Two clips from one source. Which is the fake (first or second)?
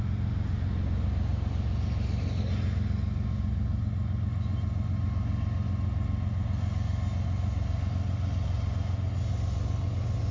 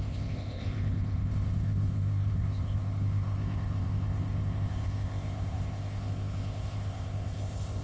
second